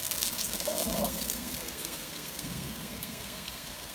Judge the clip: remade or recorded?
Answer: remade